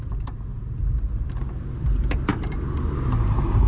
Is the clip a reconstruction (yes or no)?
yes